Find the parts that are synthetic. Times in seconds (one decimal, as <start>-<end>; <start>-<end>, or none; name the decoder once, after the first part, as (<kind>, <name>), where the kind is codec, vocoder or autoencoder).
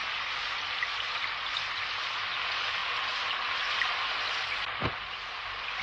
none